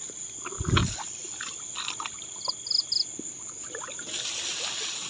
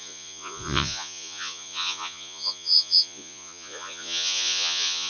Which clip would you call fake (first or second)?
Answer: second